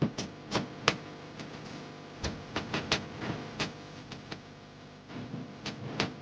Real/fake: real